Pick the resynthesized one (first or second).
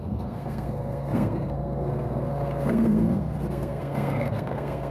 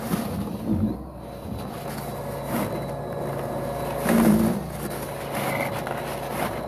first